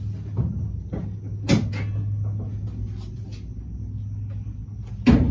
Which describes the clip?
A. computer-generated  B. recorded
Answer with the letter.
B